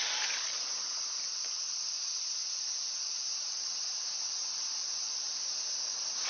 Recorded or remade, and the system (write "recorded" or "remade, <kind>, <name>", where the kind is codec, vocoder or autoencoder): recorded